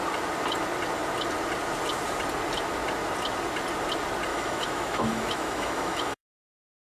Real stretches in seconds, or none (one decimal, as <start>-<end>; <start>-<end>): 0.0-4.3